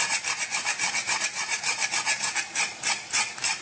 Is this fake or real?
fake